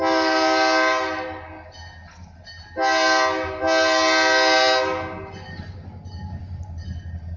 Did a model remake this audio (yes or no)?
no